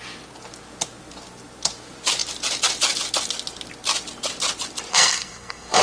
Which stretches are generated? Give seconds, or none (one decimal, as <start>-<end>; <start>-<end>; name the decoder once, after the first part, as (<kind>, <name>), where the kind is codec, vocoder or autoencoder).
4.9-5.8 (codec, SNAC)